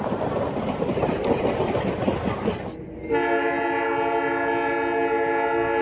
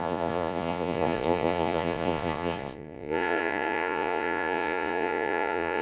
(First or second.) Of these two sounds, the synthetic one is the second